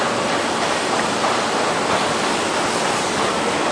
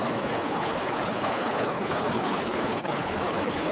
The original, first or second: first